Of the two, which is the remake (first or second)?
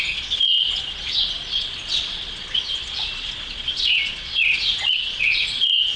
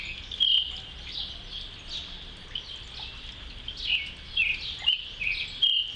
first